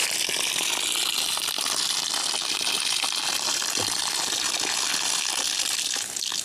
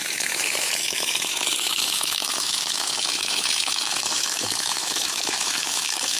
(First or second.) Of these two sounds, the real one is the first